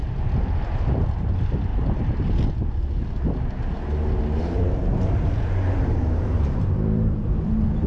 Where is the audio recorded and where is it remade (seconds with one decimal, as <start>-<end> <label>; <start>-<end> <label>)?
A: 0.0-1.7 remade; 1.7-4.4 recorded; 4.4-7.9 remade